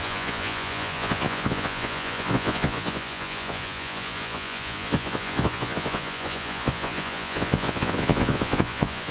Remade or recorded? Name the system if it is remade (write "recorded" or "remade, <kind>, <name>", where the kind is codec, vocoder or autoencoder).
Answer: remade, vocoder, Vocos